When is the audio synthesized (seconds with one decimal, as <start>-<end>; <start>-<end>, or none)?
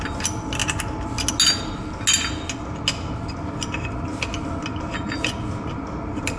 none